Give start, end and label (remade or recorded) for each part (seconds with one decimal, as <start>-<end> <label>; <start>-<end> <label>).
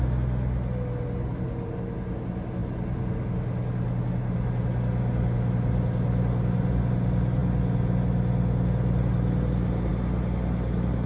0.0-11.1 recorded